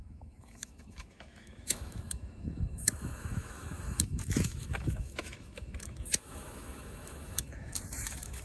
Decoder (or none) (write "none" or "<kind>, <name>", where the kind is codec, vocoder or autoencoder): autoencoder, DAC-VAE